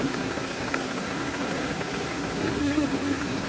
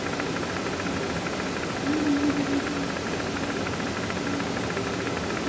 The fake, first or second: first